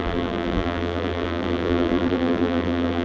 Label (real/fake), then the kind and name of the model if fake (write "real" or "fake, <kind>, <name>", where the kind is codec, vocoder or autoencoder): fake, vocoder, BigVGAN v2